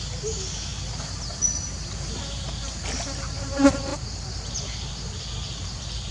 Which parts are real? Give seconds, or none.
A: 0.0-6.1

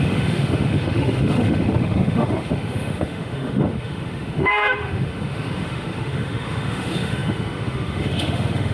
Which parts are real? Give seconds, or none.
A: none